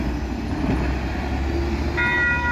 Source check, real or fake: real